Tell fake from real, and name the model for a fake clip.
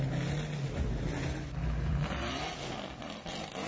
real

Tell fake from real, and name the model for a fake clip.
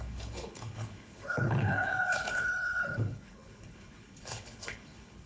fake, codec, HILCodec